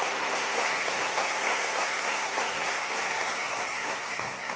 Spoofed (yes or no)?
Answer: yes